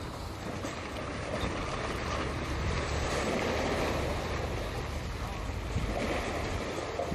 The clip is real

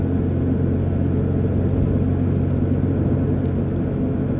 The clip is real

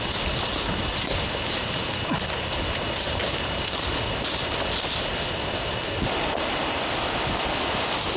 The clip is real